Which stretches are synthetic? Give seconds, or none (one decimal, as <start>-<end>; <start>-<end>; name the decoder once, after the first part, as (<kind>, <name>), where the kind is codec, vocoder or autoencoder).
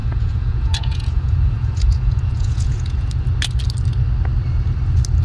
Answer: 0.0-3.1 (vocoder, Vocos)